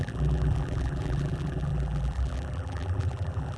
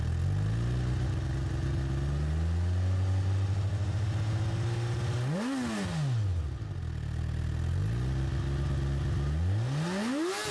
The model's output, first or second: first